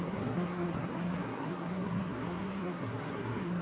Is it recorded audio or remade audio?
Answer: remade